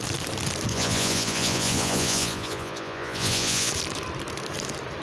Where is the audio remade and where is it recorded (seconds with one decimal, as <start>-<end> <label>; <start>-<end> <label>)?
0.0-0.7 recorded; 0.7-3.7 remade; 3.7-5.0 recorded